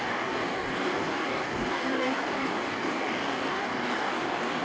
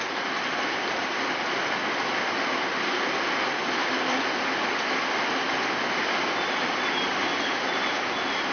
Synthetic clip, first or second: first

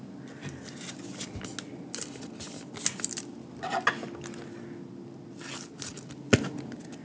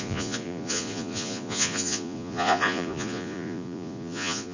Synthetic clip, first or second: second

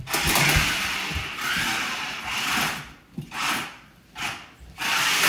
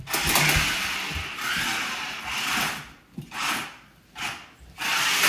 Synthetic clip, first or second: first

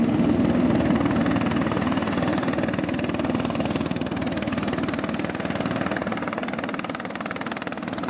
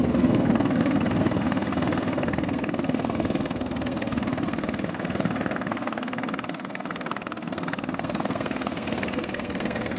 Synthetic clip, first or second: second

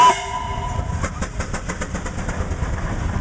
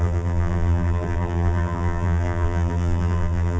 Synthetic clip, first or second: second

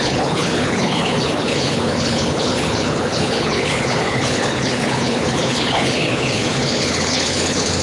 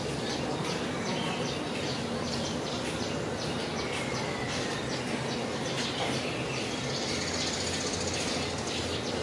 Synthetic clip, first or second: first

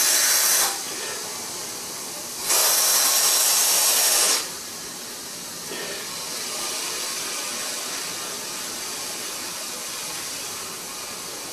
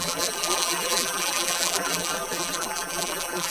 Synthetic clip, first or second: second